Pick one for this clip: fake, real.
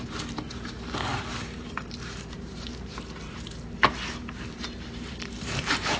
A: fake